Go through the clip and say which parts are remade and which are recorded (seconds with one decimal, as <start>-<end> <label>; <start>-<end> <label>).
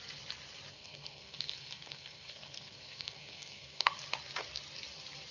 0.0-0.7 recorded; 0.7-3.9 remade; 3.9-5.3 recorded